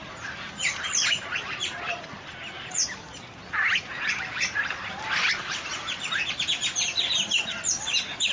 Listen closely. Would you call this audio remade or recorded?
recorded